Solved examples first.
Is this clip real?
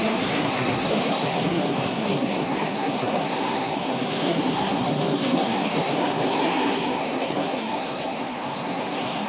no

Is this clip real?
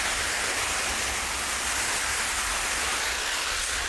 yes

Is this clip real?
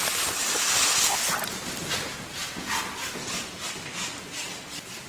yes